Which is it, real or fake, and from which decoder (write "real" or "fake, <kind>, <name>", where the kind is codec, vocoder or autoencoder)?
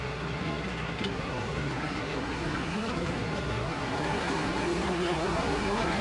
fake, codec, SNAC